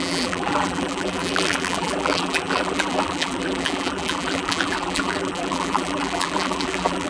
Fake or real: fake